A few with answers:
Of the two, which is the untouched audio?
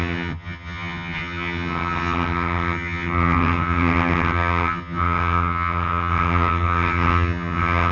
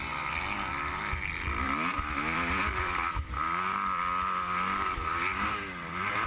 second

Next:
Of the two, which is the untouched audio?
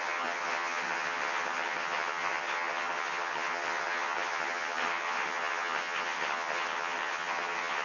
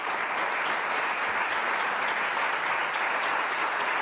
second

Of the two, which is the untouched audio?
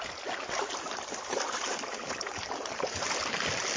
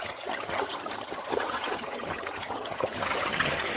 first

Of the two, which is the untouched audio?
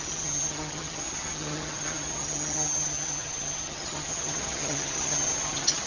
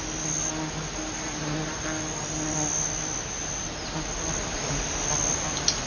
second